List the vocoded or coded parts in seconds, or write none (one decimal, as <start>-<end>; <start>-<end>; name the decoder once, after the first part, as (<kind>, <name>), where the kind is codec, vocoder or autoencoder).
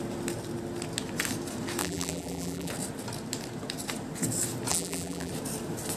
1.8-2.7 (vocoder, BigVGAN v2); 4.7-5.3